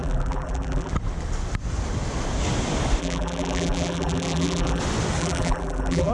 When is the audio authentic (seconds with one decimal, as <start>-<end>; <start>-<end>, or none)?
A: 0.9-3.0; 4.8-5.2